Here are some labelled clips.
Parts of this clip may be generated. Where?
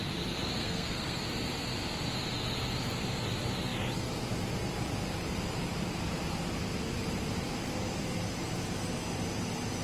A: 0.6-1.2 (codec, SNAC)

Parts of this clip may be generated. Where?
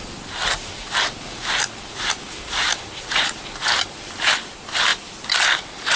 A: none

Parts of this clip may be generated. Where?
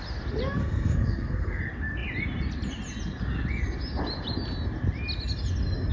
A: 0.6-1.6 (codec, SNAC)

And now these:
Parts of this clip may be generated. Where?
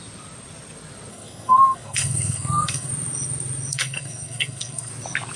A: 1.1-2.9 (codec, SNAC); 3.7-4.9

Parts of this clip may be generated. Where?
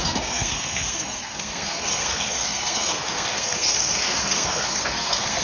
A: 0.0-5.4 (codec, SNAC)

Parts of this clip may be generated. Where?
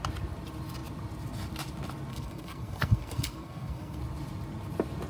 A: 2.1-4.0 (codec, SNAC)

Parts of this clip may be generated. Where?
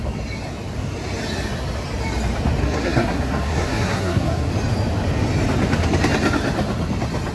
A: 2.6-4.5 (codec, SNAC)